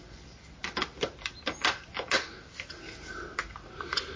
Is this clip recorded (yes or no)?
yes